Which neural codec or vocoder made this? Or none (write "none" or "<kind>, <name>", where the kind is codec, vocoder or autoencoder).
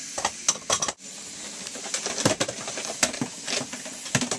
none